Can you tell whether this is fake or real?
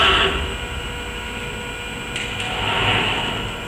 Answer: fake